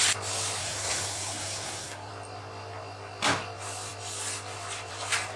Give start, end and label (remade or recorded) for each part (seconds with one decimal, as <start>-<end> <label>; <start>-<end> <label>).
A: 0.0-0.6 recorded; 0.6-2.1 remade; 2.1-5.4 recorded